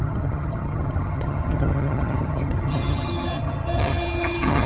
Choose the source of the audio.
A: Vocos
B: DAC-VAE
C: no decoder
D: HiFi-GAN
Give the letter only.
D